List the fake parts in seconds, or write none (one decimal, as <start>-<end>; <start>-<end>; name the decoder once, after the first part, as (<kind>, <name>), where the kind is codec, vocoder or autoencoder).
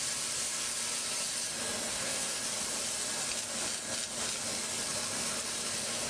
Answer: 1.9-2.4 (codec, SNAC)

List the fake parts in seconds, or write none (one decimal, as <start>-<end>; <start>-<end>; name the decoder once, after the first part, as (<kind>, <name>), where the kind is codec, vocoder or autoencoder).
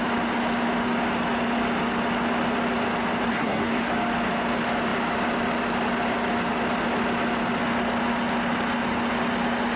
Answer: 3.3-3.9 (codec, SNAC)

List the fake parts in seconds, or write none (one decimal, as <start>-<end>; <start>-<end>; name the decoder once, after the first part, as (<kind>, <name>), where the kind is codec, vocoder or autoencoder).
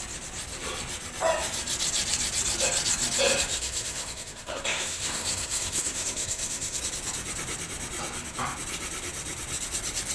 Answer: 3.5-6.8 (codec, SNAC)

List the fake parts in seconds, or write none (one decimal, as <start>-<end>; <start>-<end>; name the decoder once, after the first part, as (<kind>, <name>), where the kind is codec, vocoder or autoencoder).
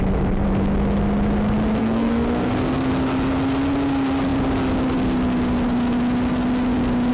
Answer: 1.8-2.9 (codec, SNAC)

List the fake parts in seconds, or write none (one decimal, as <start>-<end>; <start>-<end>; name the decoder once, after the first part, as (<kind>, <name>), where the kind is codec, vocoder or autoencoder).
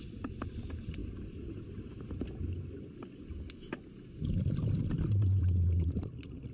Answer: none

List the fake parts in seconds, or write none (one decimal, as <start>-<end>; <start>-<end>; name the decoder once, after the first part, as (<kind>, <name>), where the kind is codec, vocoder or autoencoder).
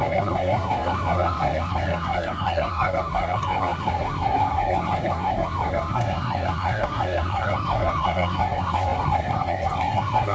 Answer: 0.0-10.3 (codec, SNAC)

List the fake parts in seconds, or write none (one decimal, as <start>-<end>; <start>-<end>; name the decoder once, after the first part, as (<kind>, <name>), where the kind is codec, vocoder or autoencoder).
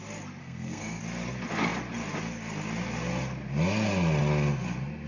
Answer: 0.4-1.0 (codec, SNAC)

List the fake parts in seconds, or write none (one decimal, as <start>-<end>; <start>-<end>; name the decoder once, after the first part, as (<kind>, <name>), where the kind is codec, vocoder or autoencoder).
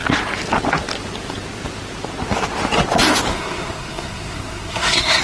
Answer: 3.3-5.2 (codec, SNAC)